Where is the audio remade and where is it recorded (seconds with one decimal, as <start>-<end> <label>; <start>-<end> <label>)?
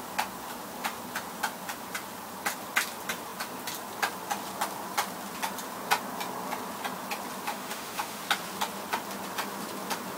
0.0-7.5 recorded; 7.5-8.2 remade; 8.2-10.2 recorded